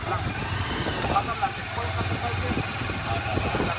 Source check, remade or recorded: recorded